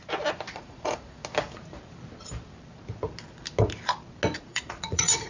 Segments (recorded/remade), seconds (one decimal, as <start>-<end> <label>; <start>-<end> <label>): 0.0-0.5 recorded; 0.5-1.2 remade; 1.2-4.4 recorded; 4.4-5.3 remade